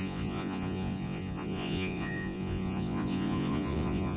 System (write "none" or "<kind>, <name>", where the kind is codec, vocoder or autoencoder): vocoder, Vocos